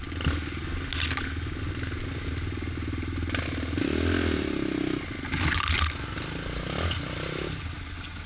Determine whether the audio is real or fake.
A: real